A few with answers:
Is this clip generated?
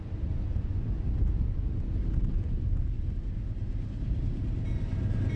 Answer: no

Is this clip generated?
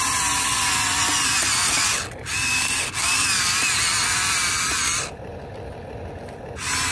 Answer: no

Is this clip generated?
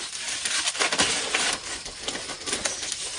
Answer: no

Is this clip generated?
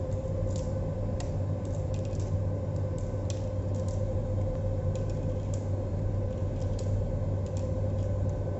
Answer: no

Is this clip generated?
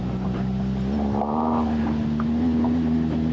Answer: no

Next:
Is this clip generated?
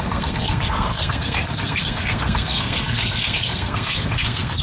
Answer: yes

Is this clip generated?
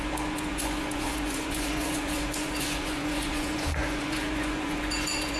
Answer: yes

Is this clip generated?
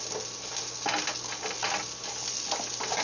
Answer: no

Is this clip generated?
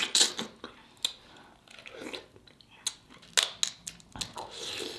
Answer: no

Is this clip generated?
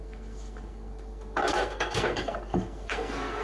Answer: yes